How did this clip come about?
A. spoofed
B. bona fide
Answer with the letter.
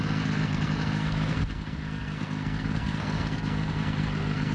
A